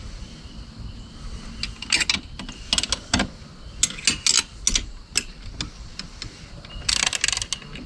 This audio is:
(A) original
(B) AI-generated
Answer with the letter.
A